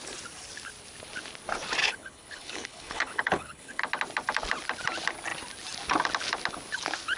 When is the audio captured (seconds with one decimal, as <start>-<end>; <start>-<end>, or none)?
0.0-1.8; 3.8-7.2